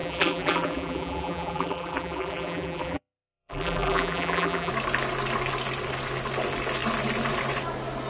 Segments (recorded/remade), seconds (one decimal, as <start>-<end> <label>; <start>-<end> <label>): 0.0-4.7 remade; 4.7-8.1 recorded